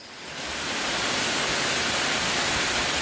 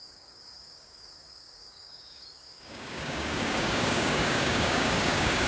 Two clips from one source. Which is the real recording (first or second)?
first